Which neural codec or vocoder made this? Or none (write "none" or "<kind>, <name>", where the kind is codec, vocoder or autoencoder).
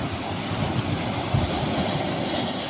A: vocoder, BigVGAN v2